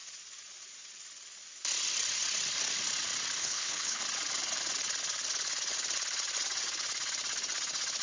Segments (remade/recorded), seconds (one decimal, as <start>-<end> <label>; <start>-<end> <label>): 0.0-3.4 recorded; 3.4-4.0 remade; 4.0-8.0 recorded